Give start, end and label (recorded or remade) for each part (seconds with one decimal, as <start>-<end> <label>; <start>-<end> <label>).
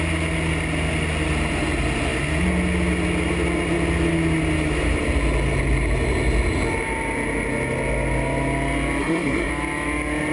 0.0-9.0 recorded; 9.0-9.5 remade; 9.5-10.3 recorded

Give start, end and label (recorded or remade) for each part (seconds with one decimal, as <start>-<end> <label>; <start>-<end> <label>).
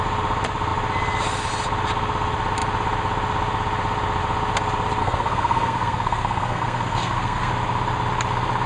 0.0-5.0 recorded; 5.0-7.5 remade; 7.5-8.7 recorded